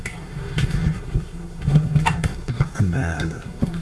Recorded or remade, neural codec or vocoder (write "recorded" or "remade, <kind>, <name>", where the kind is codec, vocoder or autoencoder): remade, codec, SNAC